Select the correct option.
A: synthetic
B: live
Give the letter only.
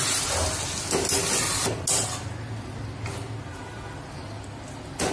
B